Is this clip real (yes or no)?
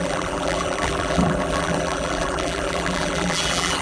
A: no